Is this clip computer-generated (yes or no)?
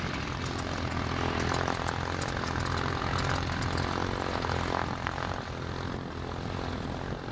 no